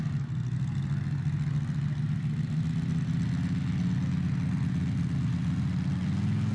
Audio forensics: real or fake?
real